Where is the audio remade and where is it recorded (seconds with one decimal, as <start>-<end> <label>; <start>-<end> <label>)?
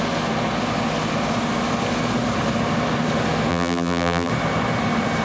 0.0-3.5 recorded; 3.5-4.3 remade; 4.3-5.2 recorded